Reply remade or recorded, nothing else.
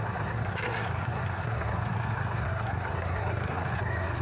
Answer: remade